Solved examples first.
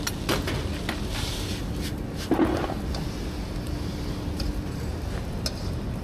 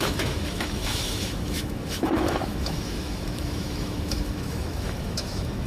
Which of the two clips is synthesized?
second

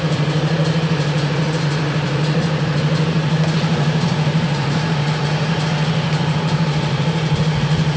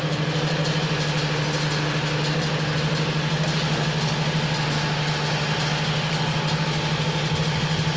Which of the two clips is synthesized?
first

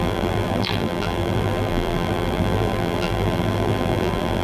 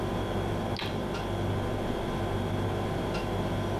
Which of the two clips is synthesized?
first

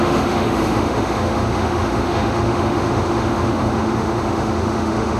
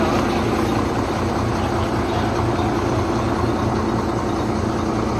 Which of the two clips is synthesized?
first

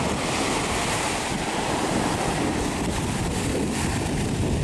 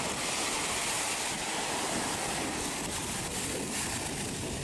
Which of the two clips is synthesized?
first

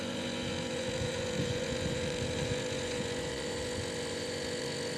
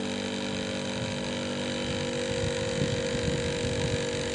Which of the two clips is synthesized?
first